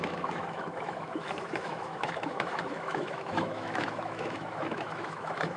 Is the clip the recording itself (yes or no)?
no